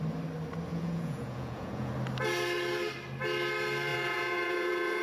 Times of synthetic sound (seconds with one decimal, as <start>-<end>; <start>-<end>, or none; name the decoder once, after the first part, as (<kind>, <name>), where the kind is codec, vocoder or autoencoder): 0.7-1.9 (vocoder, Vocos); 3.9-5.0